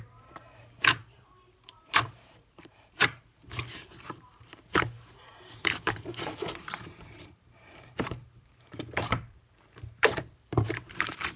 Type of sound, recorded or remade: remade